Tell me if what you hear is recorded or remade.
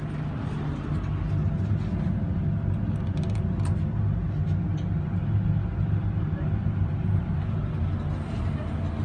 recorded